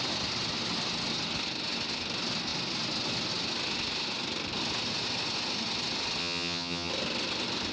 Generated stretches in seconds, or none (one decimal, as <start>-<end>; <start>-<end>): 6.2-6.9